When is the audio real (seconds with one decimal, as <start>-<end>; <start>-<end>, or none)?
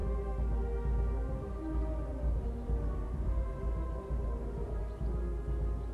0.0-2.1; 4.8-5.9